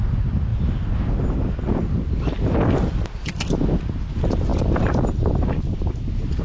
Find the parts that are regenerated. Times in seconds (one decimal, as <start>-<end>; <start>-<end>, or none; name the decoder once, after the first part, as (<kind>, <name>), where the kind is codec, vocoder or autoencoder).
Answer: 4.5-6.0 (vocoder, BigVGAN v2)